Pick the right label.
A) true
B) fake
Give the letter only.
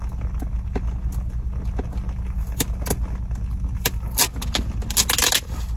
A